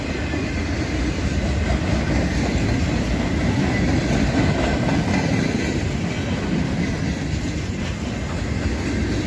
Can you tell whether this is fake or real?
real